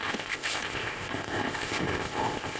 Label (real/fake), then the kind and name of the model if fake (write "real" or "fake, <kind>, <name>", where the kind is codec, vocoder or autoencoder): fake, codec, ZipCodec